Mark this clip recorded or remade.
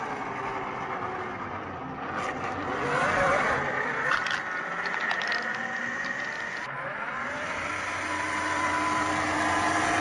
recorded